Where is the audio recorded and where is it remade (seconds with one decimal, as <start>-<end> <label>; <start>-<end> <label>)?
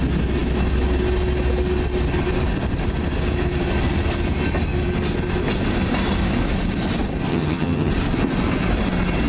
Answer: 0.0-7.3 recorded; 7.3-7.9 remade; 7.9-9.3 recorded